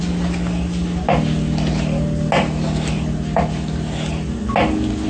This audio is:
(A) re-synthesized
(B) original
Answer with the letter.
B